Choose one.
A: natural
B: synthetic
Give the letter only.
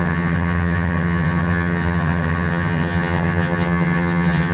B